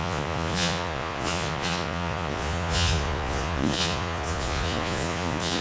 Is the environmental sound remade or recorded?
remade